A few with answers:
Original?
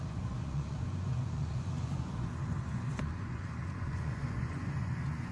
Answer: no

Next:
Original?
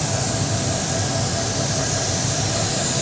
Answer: no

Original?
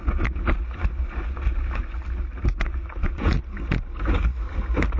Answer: yes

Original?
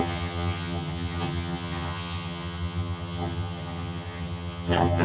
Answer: no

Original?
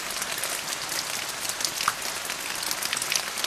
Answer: yes